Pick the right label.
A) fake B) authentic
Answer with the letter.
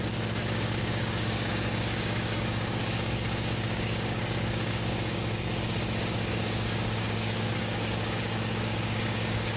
A